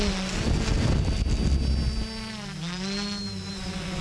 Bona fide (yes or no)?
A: yes